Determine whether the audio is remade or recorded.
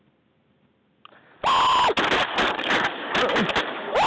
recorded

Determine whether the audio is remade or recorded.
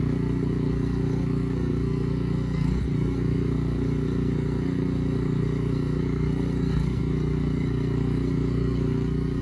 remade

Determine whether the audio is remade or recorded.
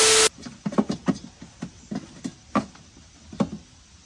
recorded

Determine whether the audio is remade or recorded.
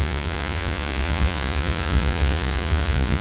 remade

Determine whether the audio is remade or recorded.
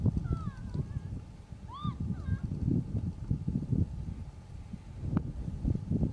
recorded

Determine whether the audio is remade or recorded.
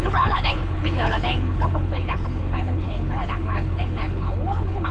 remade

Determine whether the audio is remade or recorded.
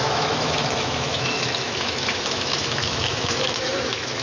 remade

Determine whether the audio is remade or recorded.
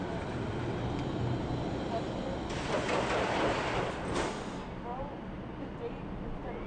recorded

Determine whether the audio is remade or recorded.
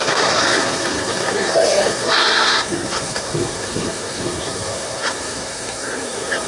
remade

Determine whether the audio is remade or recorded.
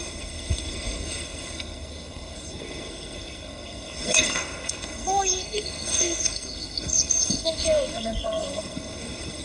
remade